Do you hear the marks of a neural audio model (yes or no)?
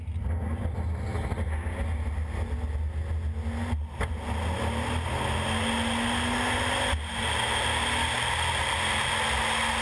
no